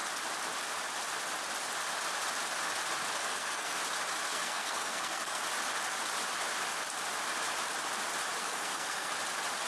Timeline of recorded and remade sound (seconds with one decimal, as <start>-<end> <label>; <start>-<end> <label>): 0.0-3.2 recorded; 3.2-3.8 remade; 3.8-4.3 recorded; 4.3-5.4 remade; 5.4-8.4 recorded; 8.4-9.1 remade; 9.1-9.7 recorded